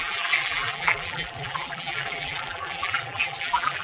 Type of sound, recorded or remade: remade